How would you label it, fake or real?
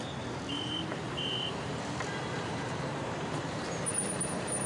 fake